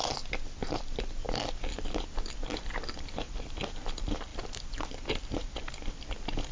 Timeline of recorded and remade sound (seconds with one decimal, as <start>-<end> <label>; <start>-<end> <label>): 0.0-6.5 recorded